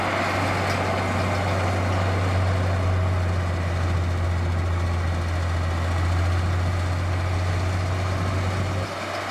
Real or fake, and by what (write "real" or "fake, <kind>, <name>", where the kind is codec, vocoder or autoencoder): real